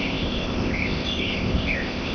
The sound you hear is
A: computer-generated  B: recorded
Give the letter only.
A